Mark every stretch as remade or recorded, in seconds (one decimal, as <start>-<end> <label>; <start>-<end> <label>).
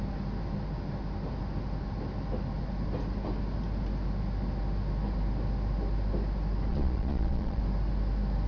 0.0-6.7 recorded; 6.7-7.6 remade; 7.6-8.5 recorded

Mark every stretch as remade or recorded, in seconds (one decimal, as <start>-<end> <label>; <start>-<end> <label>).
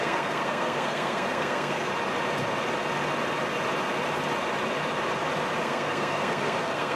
0.0-1.9 remade; 1.9-5.6 recorded; 5.6-7.0 remade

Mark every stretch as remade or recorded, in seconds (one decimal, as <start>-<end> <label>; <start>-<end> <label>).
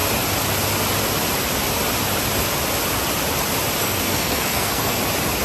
0.0-3.8 recorded; 3.8-5.0 remade; 5.0-5.4 recorded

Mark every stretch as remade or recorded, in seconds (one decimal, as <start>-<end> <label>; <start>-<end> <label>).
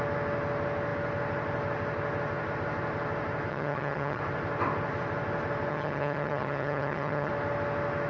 0.0-3.5 recorded; 3.5-4.2 remade; 4.2-5.7 recorded; 5.7-7.3 remade; 7.3-8.1 recorded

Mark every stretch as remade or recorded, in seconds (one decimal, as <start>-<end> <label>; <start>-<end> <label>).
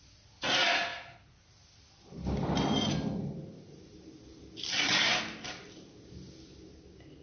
0.0-7.2 recorded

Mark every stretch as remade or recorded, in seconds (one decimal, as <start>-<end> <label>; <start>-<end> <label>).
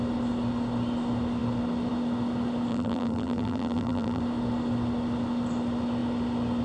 0.0-2.7 recorded; 2.7-4.2 remade; 4.2-6.6 recorded